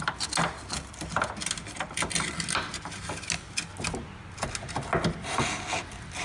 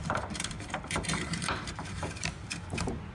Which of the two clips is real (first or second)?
first